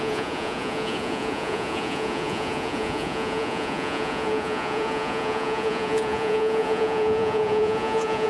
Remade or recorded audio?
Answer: remade